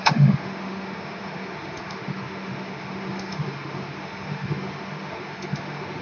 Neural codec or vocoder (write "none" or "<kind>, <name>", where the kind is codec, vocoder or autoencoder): autoencoder, DAC-VAE